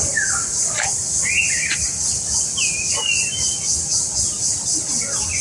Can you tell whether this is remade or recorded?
recorded